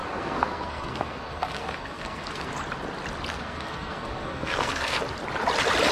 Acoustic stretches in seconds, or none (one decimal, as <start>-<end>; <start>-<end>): 2.5-3.3; 5.0-5.9